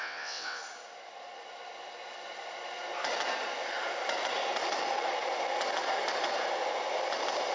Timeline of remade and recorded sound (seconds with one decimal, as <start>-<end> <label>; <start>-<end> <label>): 0.0-0.6 remade; 0.6-7.5 recorded